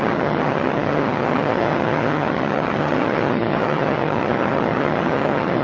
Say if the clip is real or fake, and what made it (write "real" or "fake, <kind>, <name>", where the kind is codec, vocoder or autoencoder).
fake, vocoder, HiFi-GAN